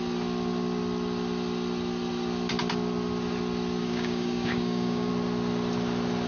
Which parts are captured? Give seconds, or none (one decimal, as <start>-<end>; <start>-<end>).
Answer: 0.0-3.8; 5.1-6.3